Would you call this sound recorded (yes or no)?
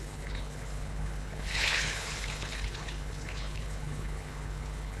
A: no